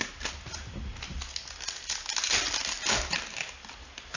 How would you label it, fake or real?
real